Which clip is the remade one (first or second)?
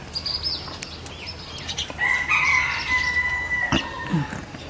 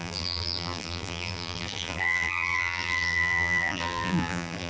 second